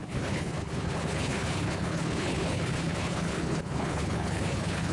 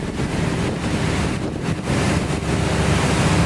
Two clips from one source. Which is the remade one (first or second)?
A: first